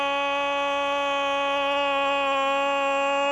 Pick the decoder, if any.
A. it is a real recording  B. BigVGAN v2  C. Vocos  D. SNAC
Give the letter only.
A